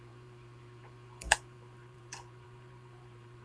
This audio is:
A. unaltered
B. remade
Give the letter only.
B